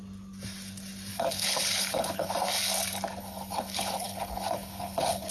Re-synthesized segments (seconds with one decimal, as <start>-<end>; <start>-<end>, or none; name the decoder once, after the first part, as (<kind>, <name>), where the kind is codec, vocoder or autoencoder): 1.1-2.3 (codec, HILCodec); 3.2-5.3